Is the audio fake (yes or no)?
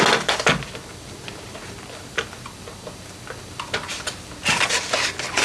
no